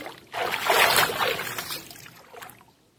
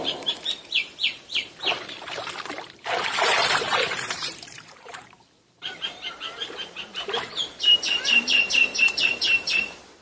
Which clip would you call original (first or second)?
first